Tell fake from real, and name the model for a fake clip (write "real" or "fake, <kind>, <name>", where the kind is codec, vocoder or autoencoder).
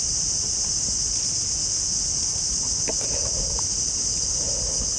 real